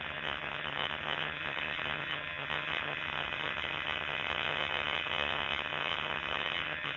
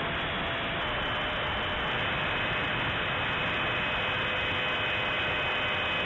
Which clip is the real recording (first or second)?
second